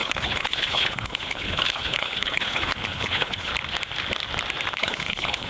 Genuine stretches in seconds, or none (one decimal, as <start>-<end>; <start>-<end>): 3.5-4.8